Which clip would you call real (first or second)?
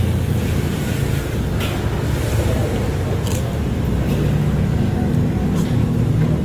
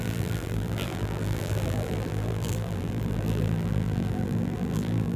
first